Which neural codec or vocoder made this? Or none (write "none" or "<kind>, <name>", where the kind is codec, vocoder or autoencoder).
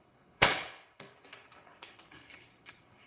codec, HILCodec